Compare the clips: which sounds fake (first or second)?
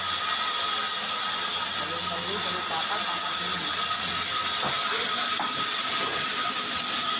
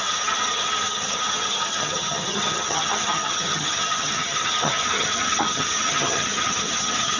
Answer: second